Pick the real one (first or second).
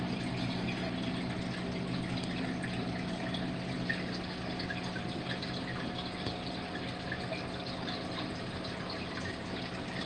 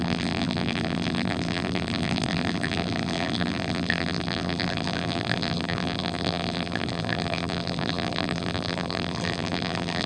first